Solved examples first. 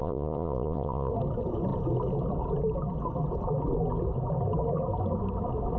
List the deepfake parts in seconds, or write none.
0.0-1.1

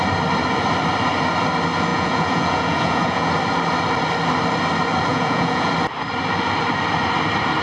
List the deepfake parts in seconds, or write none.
1.9-3.3; 5.1-5.7

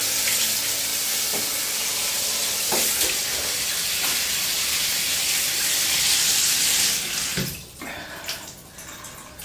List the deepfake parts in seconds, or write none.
none

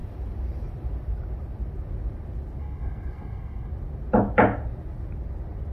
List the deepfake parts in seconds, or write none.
2.6-3.7